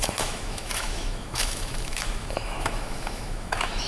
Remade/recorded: remade